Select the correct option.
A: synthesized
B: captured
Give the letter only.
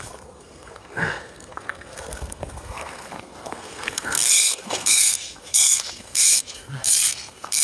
A